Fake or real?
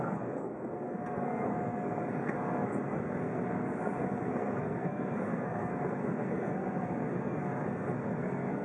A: fake